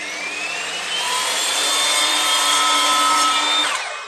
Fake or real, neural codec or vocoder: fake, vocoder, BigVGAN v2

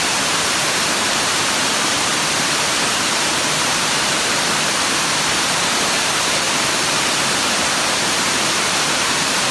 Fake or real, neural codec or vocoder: fake, vocoder, BigVGAN v2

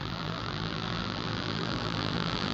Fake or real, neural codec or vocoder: fake, vocoder, BigVGAN v2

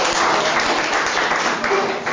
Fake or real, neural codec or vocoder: fake, vocoder, BigVGAN v2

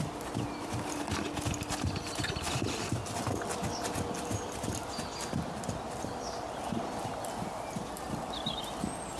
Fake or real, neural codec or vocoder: real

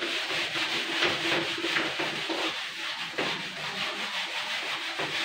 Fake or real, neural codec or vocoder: fake, vocoder, BigVGAN v2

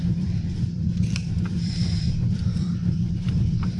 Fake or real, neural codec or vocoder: fake, vocoder, BigVGAN v2